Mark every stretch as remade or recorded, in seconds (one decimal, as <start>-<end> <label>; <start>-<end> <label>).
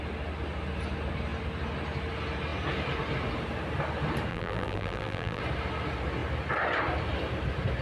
0.0-4.3 recorded; 4.3-5.4 remade; 5.4-7.8 recorded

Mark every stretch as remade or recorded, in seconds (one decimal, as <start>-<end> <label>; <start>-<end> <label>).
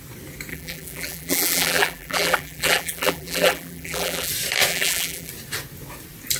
0.0-0.5 recorded; 0.5-4.3 remade; 4.3-4.7 recorded; 4.7-5.3 remade; 5.3-6.4 recorded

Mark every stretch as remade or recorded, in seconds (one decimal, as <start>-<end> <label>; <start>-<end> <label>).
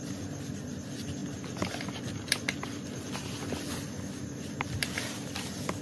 0.0-5.8 recorded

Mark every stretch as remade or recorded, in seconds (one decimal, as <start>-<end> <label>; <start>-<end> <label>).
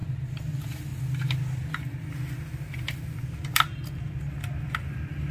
0.0-5.3 recorded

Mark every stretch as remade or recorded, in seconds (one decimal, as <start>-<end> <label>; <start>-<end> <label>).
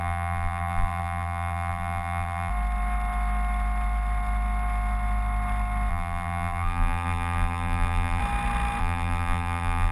0.0-2.5 remade; 2.5-5.9 recorded; 5.9-8.2 remade; 8.2-8.8 recorded; 8.8-9.9 remade